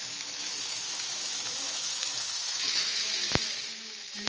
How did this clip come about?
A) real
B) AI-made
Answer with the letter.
B